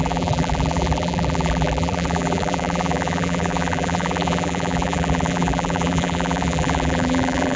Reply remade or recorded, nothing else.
remade